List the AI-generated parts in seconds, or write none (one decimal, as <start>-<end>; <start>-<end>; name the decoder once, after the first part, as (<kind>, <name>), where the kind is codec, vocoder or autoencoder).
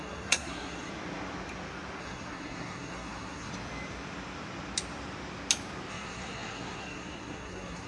0.0-0.9 (codec, SNAC); 2.0-3.5; 5.9-7.9